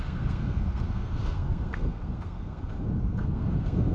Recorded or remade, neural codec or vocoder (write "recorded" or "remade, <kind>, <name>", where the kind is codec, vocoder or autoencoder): remade, codec, SNAC